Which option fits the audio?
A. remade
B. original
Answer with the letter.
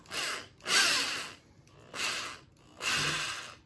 B